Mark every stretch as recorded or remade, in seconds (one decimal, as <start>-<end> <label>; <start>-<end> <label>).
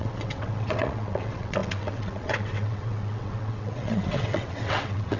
0.0-5.2 remade